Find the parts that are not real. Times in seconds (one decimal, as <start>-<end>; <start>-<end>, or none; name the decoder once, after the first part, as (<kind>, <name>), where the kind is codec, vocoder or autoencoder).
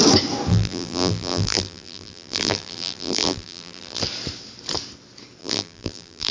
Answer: 0.5-4.0 (vocoder, BigVGAN v2); 5.4-6.3